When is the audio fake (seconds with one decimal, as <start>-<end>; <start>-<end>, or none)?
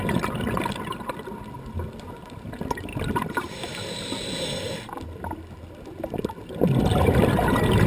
none